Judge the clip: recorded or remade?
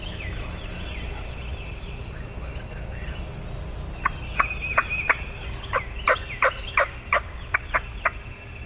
recorded